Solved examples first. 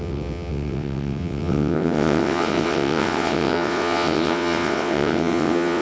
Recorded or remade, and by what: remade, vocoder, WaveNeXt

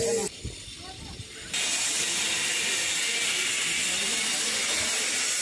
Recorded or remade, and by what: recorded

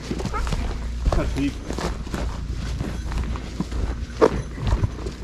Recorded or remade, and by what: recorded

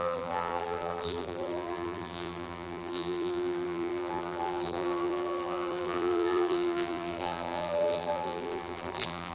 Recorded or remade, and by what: remade, vocoder, BigVGAN v2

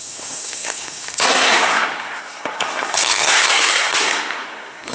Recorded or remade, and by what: remade, codec, SNAC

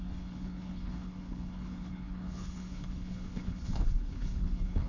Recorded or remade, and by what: remade, codec, HILCodec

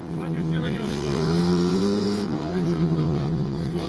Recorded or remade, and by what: remade, vocoder, WaveNeXt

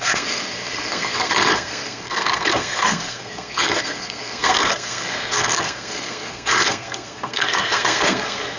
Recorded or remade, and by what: remade, codec, SNAC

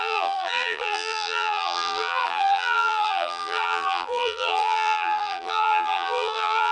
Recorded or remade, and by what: remade, vocoder, BigVGAN v2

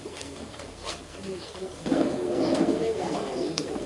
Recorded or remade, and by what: remade, codec, SNAC